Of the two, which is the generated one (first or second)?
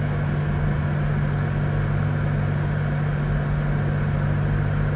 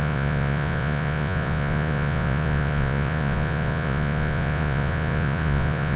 second